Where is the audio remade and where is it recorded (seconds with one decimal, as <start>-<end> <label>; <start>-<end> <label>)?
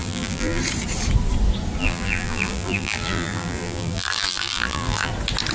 0.0-0.6 remade; 0.6-1.8 recorded; 1.8-5.1 remade; 5.1-5.5 recorded